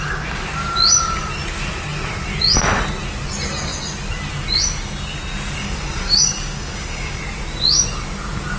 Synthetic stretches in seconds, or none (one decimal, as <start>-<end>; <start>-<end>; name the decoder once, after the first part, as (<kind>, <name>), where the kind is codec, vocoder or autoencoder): 5.6-7.2 (codec, DAC)